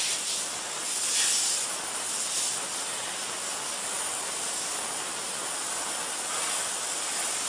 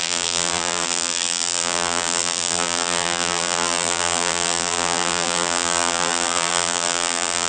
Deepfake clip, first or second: second